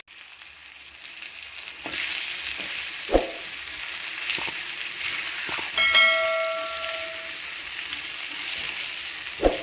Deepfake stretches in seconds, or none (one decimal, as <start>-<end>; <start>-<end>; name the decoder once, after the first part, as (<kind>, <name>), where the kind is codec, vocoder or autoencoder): none